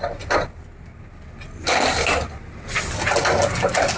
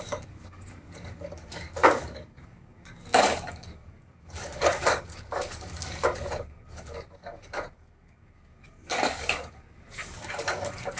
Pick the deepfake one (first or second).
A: second